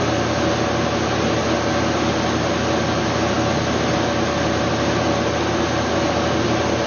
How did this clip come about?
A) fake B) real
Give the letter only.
B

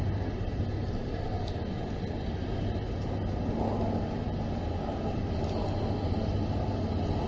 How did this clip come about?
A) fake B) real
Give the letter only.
B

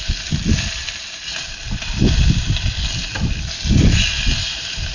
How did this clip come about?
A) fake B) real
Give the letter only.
B